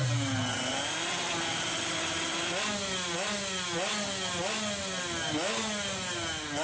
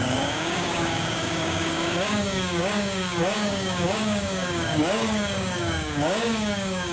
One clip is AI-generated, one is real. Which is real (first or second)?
first